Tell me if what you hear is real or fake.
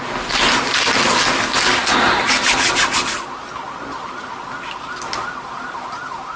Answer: real